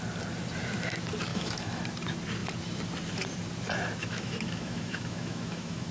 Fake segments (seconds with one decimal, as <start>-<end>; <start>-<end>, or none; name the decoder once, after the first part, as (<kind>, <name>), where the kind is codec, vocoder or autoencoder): 1.3-1.8 (autoencoder, DAC-VAE); 4.0-5.9